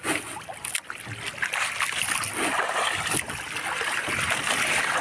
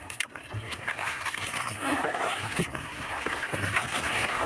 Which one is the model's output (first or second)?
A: second